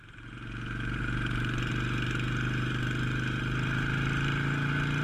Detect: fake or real real